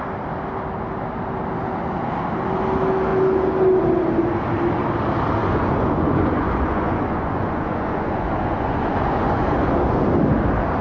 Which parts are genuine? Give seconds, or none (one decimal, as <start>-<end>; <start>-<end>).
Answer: 0.0-5.4; 10.0-10.8